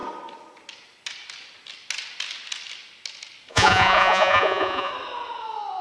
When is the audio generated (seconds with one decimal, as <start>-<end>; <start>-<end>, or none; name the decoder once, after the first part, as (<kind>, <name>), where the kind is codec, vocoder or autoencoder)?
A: 3.5-4.9 (vocoder, Vocos)